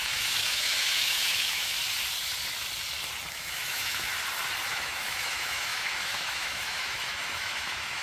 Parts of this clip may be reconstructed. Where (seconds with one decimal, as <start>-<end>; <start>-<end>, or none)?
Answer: 0.0-1.7; 3.3-4.1; 4.7-8.0